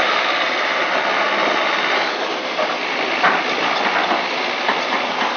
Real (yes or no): yes